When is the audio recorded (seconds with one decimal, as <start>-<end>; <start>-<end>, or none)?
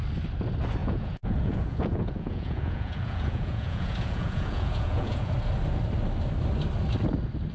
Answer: 0.0-0.8; 5.3-7.5